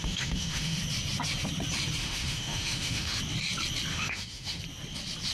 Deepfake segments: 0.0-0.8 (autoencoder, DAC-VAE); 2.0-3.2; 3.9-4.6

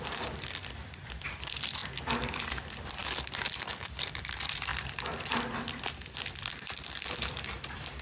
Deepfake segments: 0.0-1.8 (vocoder, BigVGAN v2); 2.3-3.0; 3.7-8.0

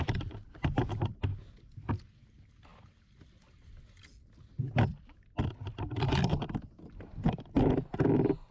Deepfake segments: 0.0-2.7 (vocoder, BigVGAN v2); 5.7-8.5

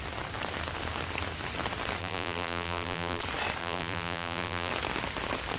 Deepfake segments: 2.0-3.2 (vocoder, BigVGAN v2); 3.6-4.7

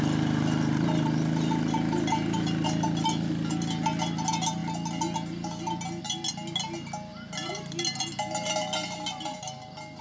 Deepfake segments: none

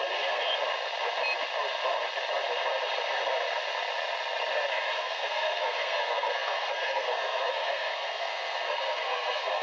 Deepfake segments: 0.0-0.5 (codec, SNAC); 4.7-9.6